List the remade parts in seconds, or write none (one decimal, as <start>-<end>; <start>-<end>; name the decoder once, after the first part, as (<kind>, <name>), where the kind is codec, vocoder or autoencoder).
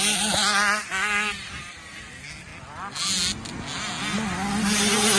none